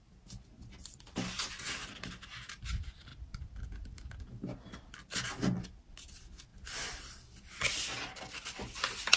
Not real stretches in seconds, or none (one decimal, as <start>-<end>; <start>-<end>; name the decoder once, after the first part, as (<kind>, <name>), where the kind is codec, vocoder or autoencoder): none